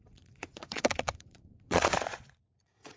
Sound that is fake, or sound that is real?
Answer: fake